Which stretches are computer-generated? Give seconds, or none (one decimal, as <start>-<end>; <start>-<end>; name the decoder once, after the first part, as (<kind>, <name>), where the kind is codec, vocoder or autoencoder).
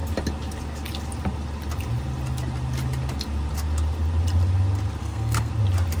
5.0-5.5 (codec, SNAC)